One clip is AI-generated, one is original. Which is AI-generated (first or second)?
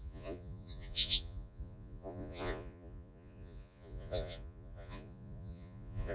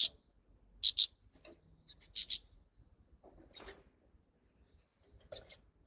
first